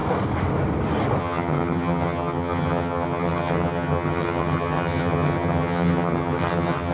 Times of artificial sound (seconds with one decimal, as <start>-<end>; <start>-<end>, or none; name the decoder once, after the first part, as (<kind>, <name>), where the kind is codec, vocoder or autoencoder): 1.2-6.9 (vocoder, HiFi-GAN)